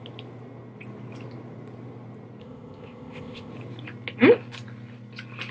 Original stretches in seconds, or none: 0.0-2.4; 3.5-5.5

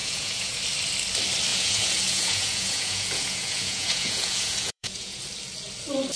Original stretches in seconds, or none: 0.6-1.5; 5.2-6.2